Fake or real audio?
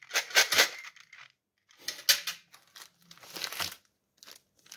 real